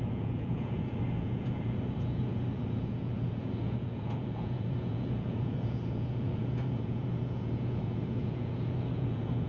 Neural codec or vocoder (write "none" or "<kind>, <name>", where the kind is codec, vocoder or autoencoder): vocoder, Vocos